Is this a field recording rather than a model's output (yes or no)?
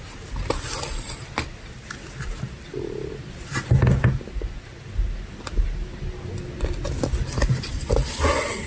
yes